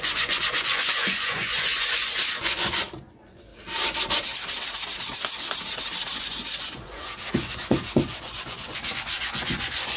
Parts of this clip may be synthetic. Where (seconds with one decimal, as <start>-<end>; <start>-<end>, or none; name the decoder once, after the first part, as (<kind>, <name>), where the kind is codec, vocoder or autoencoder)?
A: 0.0-3.5 (vocoder, Vocos); 6.2-10.0